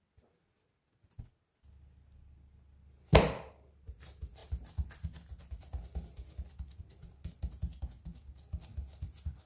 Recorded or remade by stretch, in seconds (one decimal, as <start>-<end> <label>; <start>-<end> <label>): 0.0-9.5 recorded